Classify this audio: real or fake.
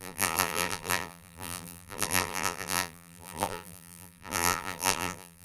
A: fake